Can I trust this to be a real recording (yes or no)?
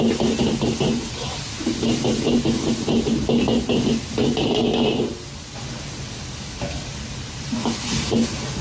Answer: yes